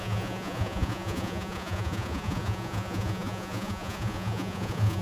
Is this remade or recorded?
remade